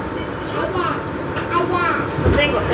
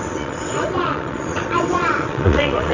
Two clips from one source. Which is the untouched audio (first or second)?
first